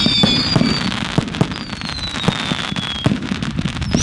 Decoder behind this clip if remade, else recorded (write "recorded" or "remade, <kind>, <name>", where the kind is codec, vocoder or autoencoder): recorded